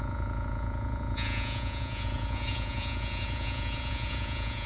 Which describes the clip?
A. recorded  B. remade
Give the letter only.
B